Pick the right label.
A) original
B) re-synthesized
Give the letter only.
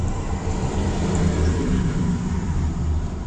B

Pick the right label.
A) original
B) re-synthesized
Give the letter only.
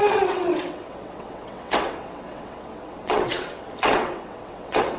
B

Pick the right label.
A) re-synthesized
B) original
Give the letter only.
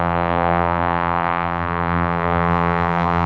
A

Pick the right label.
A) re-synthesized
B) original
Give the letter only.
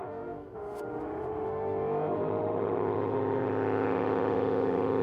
A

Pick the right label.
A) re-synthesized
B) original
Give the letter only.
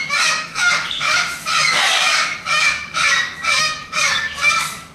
A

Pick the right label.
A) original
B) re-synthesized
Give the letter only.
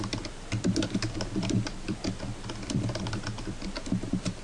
B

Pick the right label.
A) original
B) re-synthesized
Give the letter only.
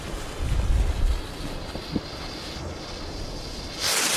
A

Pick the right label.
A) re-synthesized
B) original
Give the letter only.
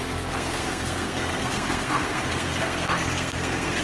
A